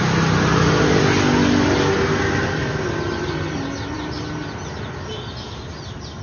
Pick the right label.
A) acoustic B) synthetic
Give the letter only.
A